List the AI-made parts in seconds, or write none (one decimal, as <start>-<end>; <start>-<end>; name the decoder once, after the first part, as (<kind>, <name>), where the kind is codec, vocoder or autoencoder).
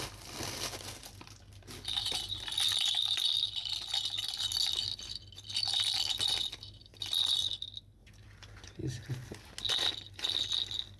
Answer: none